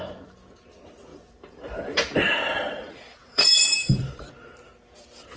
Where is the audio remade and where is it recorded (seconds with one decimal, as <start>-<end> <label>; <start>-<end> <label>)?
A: 0.0-1.1 recorded; 1.1-4.3 remade; 4.3-5.4 recorded